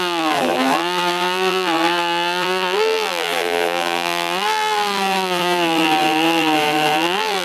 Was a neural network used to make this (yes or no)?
yes